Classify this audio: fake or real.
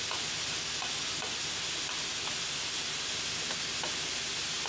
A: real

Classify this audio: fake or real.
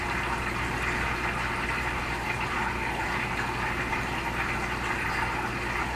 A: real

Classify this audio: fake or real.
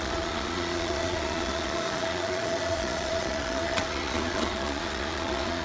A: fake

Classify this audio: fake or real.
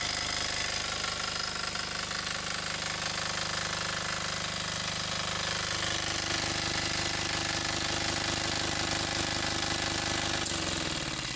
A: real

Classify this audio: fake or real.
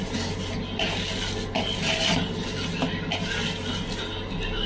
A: real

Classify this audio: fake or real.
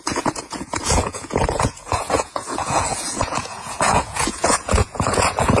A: fake